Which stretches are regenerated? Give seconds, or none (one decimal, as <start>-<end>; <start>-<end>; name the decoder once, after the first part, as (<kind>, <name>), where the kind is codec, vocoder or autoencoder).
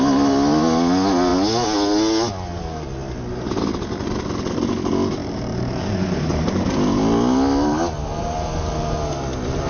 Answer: 5.2-6.7 (vocoder, BigVGAN v2)